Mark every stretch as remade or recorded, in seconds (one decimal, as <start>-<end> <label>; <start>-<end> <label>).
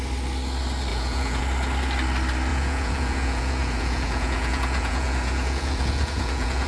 0.0-0.9 recorded; 0.9-1.4 remade; 1.4-2.5 recorded; 2.5-6.7 remade